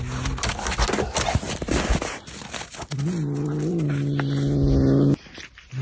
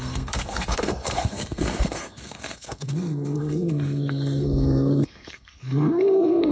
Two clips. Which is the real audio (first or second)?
first